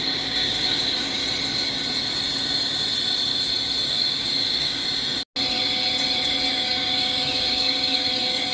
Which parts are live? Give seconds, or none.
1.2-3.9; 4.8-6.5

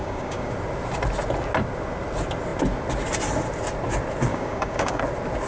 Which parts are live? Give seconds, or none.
0.5-4.3; 5.0-5.5

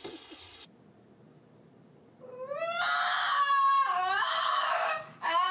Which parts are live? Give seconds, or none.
0.0-4.0